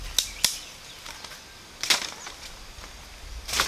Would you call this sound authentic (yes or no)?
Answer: yes